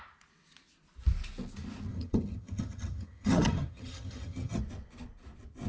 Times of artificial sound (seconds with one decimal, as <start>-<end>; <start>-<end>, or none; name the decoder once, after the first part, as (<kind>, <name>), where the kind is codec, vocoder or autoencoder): 1.9-4.6 (vocoder, HiFi-GAN)